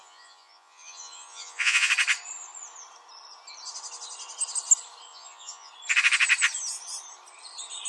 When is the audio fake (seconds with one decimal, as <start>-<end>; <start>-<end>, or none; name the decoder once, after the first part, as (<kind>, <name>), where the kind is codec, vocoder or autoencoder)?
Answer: 0.0-1.9 (vocoder, Vocos); 5.1-5.7